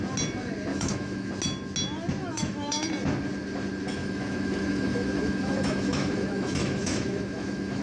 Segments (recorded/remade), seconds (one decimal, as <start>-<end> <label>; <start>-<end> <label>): 0.0-0.7 recorded; 0.7-1.3 remade; 1.3-2.2 recorded; 2.2-2.9 remade; 2.9-4.0 recorded; 4.0-7.8 remade